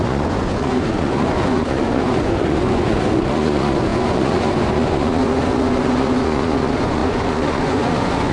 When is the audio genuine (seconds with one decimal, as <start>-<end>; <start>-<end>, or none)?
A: none